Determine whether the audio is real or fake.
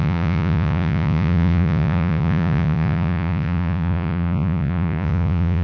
fake